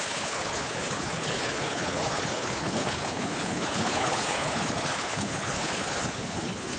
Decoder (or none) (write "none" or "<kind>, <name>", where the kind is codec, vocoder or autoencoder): codec, HILCodec